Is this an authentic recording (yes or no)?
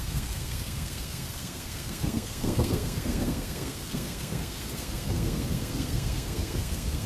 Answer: no